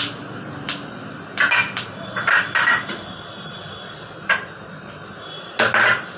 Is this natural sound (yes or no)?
yes